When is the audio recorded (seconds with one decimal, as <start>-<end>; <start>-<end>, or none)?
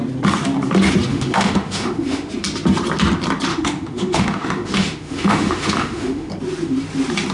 0.0-1.1; 2.3-3.5; 6.3-7.3